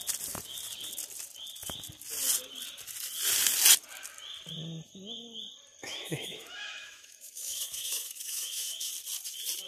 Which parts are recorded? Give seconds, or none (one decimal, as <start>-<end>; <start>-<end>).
0.0-5.8; 8.9-9.7